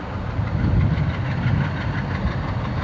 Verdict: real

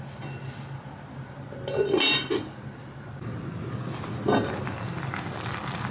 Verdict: real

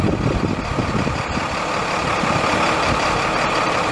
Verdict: fake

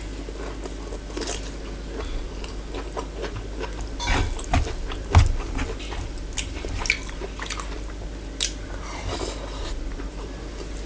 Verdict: real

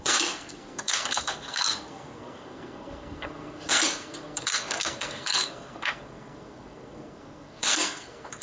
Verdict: fake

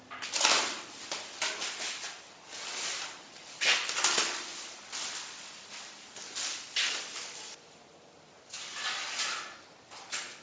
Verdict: real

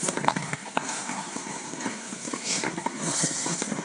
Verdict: fake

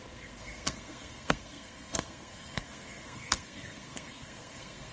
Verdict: fake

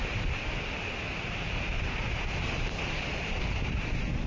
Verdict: real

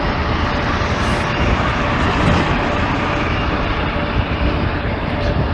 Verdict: real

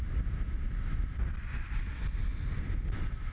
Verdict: real